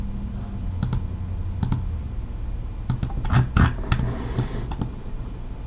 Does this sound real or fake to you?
real